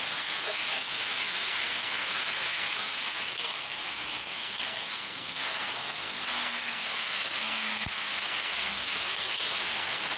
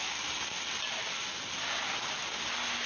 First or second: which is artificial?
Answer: first